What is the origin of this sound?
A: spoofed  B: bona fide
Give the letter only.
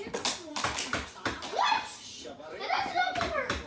B